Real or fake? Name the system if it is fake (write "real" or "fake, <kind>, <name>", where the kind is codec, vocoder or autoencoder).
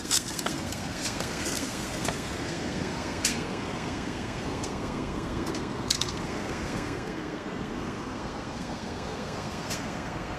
fake, codec, SNAC